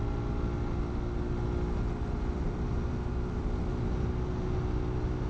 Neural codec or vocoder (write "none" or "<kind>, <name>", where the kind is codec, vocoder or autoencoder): none